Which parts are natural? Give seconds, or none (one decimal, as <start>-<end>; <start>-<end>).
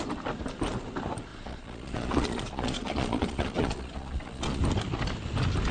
0.0-1.3; 4.6-5.7